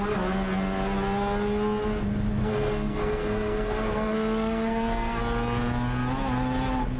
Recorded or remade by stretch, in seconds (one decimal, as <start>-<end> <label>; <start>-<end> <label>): 0.0-2.4 recorded; 2.4-5.2 remade; 5.2-7.0 recorded